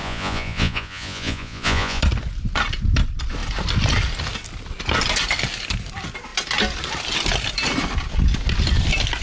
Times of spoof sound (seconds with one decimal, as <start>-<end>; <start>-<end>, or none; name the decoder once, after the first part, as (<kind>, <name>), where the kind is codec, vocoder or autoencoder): 0.0-2.0 (vocoder, Vocos)